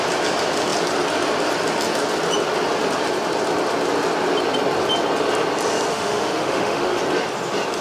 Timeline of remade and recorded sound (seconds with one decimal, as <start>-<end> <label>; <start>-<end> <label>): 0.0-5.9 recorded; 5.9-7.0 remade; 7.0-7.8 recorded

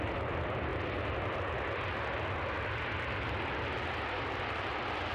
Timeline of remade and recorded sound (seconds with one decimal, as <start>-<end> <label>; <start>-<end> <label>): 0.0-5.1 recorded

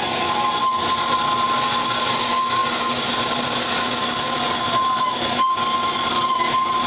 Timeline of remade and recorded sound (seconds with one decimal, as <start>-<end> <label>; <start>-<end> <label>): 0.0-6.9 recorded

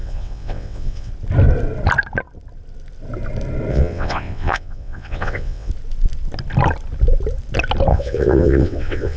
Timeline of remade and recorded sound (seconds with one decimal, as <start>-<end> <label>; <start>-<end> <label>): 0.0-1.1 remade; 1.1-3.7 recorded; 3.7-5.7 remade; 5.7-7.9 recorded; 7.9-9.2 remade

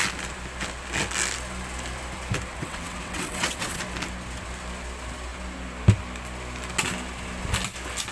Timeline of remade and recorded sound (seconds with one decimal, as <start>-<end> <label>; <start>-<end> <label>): 0.0-2.5 recorded; 2.5-3.8 remade; 3.8-8.1 recorded

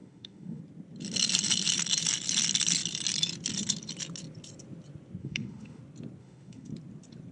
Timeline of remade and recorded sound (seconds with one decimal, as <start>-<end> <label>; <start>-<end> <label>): 0.0-0.6 remade; 0.6-5.2 recorded; 5.2-5.8 remade; 5.8-6.2 recorded; 6.2-6.7 remade; 6.7-7.3 recorded

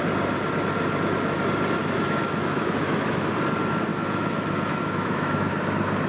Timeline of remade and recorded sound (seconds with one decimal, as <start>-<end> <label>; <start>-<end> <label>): 0.0-1.8 recorded; 1.8-3.3 remade; 3.3-3.9 recorded; 3.9-5.5 remade; 5.5-6.1 recorded